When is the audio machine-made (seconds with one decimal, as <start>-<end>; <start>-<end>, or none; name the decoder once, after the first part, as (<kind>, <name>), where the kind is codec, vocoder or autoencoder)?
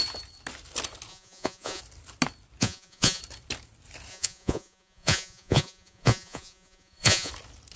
1.1-1.8 (vocoder, Vocos); 2.6-3.2; 4.1-7.3